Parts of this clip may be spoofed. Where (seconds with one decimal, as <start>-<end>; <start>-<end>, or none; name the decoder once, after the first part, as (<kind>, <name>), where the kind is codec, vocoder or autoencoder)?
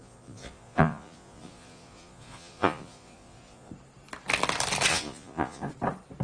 0.0-3.7 (vocoder, Vocos); 4.9-5.7